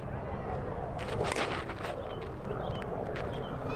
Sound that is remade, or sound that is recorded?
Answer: recorded